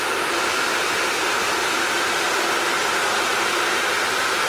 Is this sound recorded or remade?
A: recorded